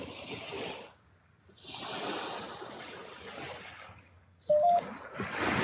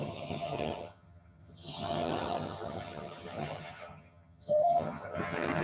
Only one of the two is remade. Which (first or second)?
second